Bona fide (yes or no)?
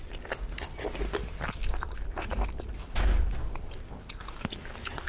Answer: yes